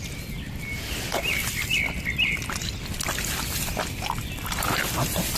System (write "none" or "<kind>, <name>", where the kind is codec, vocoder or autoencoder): none